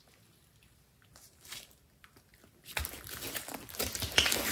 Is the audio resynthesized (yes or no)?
no